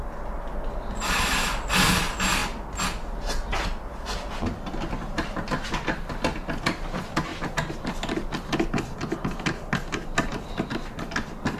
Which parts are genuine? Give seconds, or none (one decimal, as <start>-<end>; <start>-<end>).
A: 0.0-11.6